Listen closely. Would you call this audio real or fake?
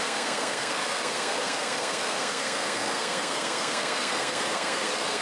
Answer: fake